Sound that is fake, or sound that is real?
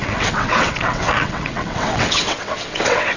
fake